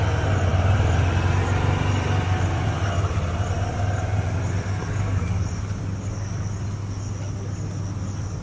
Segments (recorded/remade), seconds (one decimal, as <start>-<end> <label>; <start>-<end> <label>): 0.0-8.4 recorded